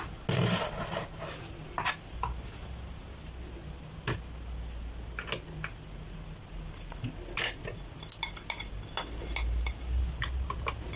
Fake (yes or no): no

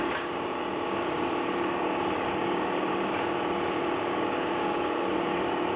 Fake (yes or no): yes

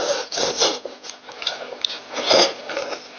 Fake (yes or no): no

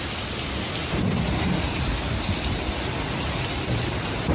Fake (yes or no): no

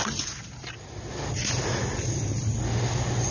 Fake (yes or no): no